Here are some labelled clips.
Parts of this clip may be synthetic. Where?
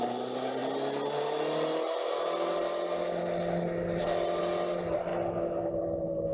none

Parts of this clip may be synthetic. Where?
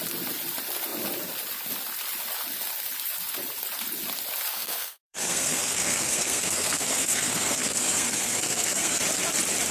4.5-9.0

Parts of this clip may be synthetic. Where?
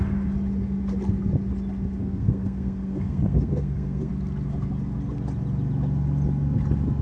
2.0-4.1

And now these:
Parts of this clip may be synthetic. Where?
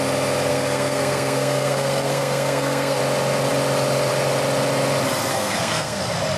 0.5-3.0; 5.3-6.0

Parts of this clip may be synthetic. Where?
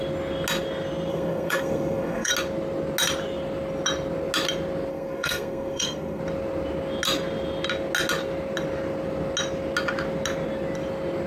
1.1-2.3; 4.9-6.2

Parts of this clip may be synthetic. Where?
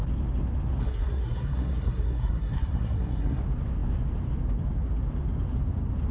0.8-3.4